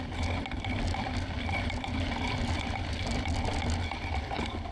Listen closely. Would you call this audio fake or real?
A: real